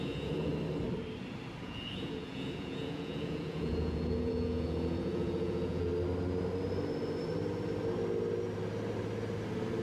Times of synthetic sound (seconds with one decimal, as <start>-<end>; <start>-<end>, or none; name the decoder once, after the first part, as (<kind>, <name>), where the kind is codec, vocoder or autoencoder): 0.0-0.5 (vocoder, Vocos); 1.6-5.9